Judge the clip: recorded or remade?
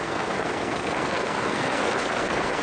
remade